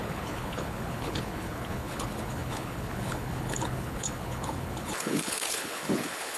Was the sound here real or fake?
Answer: fake